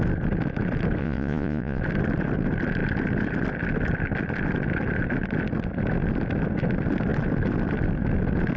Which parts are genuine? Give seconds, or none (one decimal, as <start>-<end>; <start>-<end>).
0.0-1.0; 1.8-8.6